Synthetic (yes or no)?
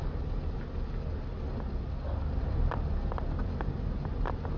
no